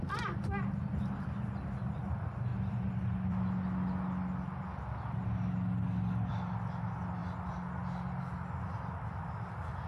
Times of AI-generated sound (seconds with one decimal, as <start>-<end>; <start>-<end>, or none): none